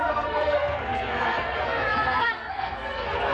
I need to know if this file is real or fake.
fake